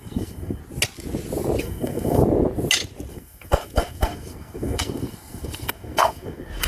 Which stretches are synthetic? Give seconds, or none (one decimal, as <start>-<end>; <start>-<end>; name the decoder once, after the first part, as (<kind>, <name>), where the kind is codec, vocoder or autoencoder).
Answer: 0.0-0.6 (codec, SNAC); 1.6-2.2; 3.1-6.7